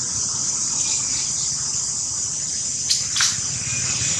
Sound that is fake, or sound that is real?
real